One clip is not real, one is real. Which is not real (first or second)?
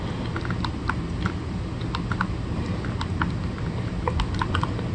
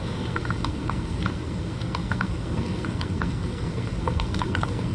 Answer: second